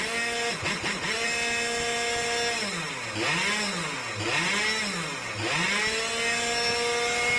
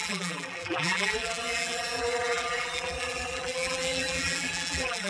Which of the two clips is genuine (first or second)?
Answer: first